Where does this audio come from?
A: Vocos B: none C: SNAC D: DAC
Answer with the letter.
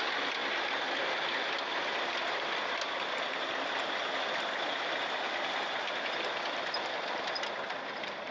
B